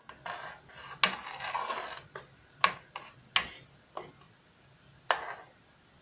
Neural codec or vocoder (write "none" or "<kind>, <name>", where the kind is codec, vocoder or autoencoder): none